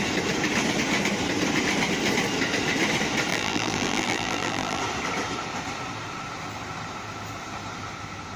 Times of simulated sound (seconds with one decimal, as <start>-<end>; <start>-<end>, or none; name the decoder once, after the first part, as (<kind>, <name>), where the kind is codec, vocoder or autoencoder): 3.3-4.8 (vocoder, BigVGAN v2)